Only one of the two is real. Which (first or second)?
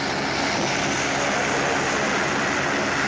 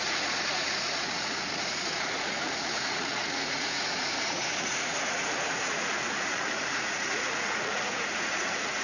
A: first